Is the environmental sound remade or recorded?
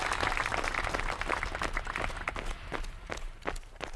recorded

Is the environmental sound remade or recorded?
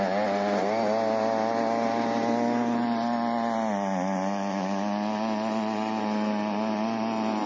recorded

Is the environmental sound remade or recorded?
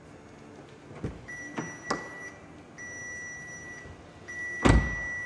recorded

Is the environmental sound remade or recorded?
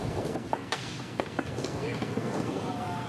remade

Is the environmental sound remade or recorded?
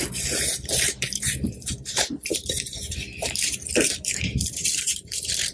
remade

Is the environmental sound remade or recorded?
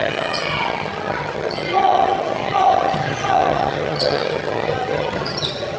remade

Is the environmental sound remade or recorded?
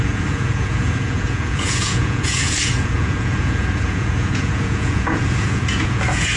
remade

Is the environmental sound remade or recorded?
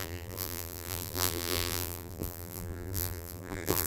remade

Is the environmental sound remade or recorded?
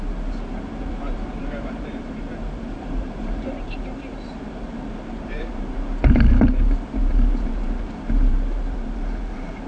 remade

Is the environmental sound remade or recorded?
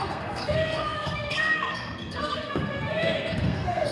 remade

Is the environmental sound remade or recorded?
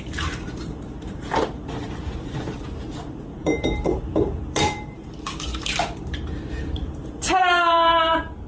remade